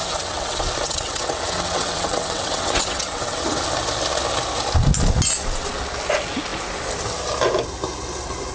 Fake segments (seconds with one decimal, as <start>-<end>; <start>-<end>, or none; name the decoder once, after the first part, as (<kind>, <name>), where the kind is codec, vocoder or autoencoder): 0.0-3.6 (vocoder, WaveNeXt)